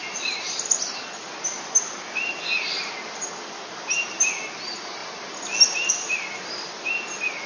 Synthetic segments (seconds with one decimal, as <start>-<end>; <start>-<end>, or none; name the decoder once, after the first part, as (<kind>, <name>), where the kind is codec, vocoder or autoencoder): none